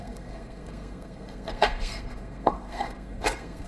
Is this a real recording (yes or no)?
no